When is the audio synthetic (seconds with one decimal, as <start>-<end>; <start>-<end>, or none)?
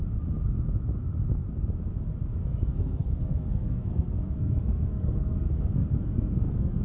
2.4-6.8